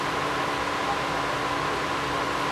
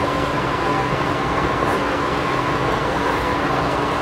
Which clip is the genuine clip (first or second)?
first